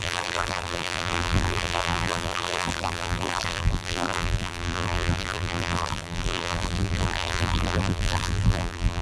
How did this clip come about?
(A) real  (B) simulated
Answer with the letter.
B